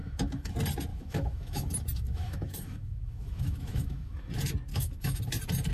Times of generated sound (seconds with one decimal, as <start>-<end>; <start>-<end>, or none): 0.0-0.5; 0.9-4.3; 4.7-5.2